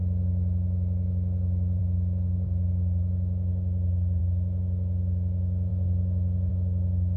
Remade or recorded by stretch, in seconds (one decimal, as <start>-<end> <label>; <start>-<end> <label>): 0.0-5.7 remade; 5.7-6.5 recorded; 6.5-7.2 remade